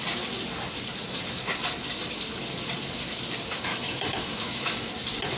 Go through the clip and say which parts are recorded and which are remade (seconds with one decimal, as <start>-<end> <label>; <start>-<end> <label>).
0.0-3.7 recorded; 3.7-4.9 remade; 4.9-5.4 recorded